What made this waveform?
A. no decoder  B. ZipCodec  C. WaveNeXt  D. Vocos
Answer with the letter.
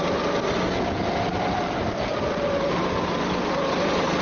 A